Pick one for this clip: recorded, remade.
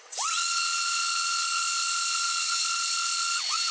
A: remade